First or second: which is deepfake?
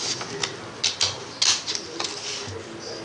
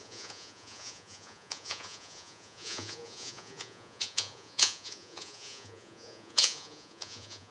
second